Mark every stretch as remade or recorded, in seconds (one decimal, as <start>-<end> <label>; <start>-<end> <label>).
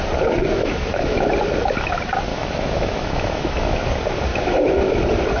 0.0-0.6 recorded; 0.6-1.3 remade; 1.3-2.3 recorded; 2.3-3.9 remade; 3.9-4.3 recorded; 4.3-4.9 remade; 4.9-5.4 recorded